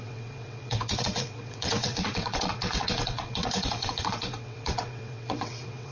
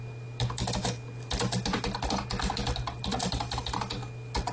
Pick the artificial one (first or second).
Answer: first